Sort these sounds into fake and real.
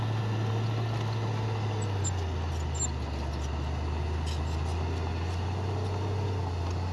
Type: real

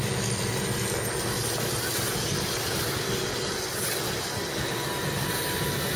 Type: real